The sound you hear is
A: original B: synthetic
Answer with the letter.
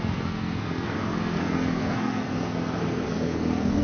B